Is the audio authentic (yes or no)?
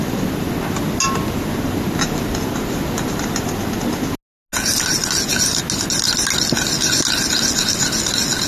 yes